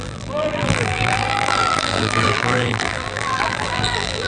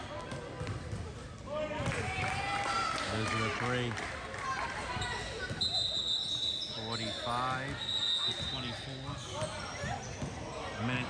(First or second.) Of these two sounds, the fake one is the first